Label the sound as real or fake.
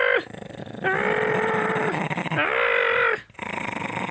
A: real